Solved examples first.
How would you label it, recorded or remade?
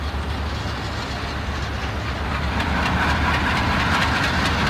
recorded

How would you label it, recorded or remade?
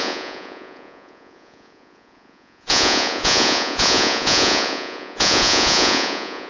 remade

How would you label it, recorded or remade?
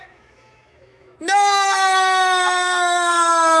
remade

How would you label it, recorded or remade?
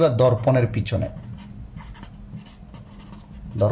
recorded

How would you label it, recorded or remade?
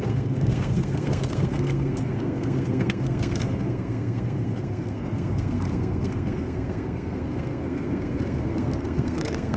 remade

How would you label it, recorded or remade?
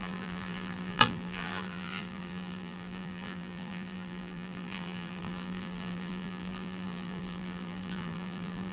remade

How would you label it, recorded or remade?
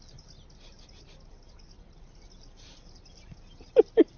recorded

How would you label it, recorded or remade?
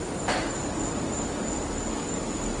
recorded